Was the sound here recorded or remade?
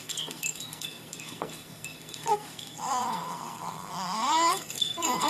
remade